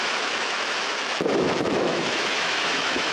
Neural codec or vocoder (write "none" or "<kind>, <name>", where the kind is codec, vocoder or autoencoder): autoencoder, DAC-VAE